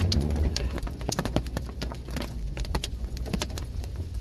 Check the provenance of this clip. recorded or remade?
remade